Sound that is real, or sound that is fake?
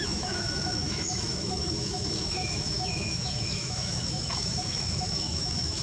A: fake